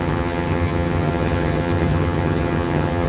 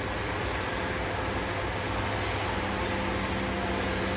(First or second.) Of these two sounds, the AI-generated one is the first